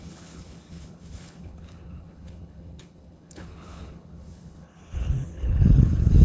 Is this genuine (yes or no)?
no